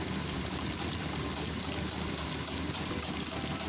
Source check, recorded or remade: recorded